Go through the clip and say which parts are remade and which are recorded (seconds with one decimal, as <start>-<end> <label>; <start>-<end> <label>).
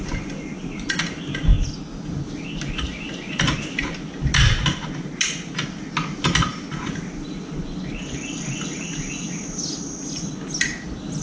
0.0-11.2 recorded